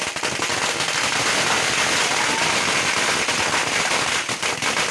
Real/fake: real